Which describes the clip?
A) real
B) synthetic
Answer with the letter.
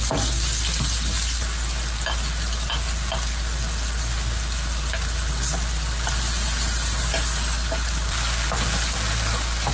A